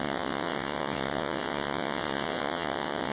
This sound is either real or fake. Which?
fake